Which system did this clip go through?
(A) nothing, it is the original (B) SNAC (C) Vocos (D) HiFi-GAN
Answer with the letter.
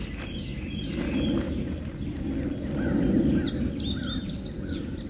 A